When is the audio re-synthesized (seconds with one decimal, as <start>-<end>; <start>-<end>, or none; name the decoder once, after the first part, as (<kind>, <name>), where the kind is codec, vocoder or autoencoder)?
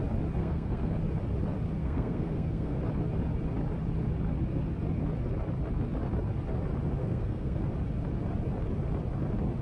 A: 0.4-1.0 (codec, SNAC); 1.8-2.8; 7.0-7.6